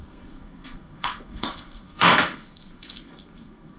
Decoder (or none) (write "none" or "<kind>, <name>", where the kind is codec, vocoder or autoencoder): codec, SNAC